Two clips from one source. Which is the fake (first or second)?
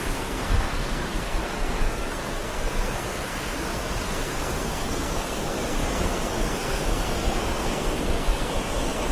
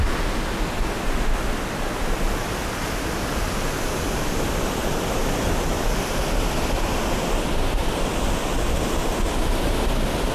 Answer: first